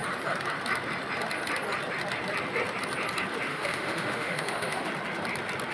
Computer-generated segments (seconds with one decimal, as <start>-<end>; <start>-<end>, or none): 3.5-4.9